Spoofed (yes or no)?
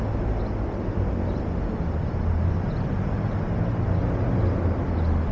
no